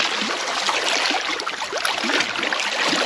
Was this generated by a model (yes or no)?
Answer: no